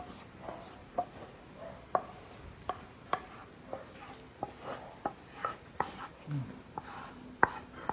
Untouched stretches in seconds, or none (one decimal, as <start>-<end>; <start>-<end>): 0.0-0.8; 1.4-5.4; 6.0-7.9